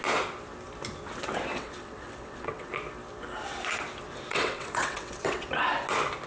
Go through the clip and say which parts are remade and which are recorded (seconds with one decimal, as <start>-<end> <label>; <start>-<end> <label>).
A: 0.0-1.5 recorded; 1.5-2.7 remade; 2.7-4.3 recorded; 4.3-5.5 remade; 5.5-6.3 recorded